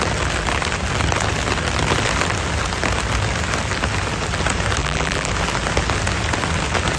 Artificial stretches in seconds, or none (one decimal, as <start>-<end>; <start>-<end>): 4.8-5.3